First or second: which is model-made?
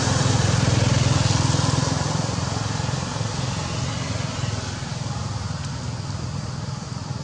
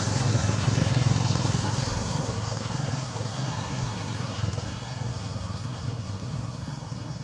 second